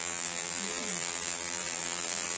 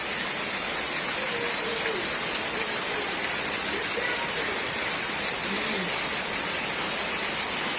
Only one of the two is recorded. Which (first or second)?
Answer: second